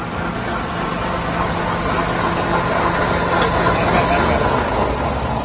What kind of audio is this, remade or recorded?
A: recorded